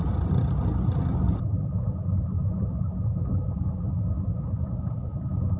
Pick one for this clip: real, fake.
real